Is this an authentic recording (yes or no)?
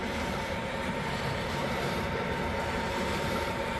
no